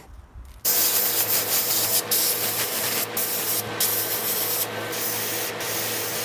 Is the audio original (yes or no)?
yes